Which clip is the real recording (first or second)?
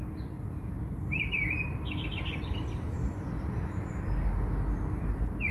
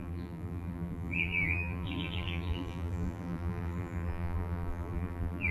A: first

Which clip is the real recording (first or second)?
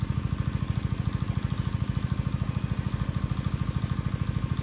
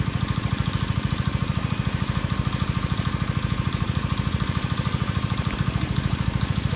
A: first